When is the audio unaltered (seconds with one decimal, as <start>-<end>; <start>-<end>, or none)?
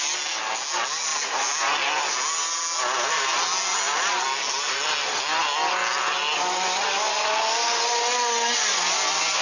0.0-9.4